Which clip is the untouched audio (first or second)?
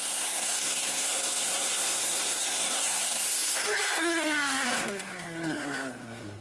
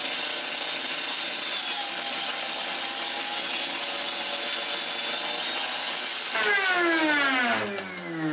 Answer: second